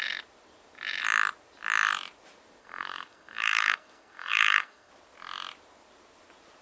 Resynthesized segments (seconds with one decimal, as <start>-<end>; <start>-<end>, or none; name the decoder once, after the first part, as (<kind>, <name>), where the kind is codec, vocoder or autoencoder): 2.6-4.9 (codec, SNAC)